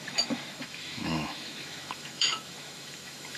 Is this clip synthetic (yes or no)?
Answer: yes